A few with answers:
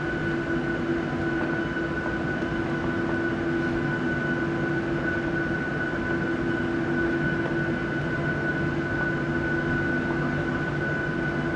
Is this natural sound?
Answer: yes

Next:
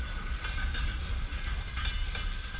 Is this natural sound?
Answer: yes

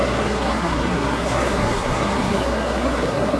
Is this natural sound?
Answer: no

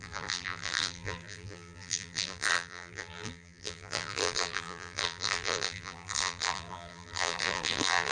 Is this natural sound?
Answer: no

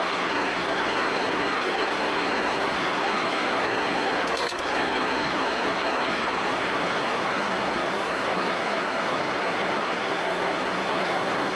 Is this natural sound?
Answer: no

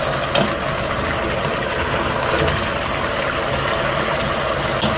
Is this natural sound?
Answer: yes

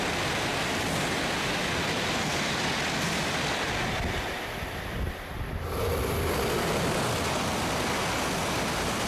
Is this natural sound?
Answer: yes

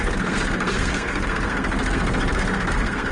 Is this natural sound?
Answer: no